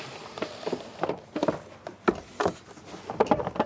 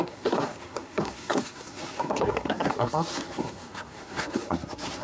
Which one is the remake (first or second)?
second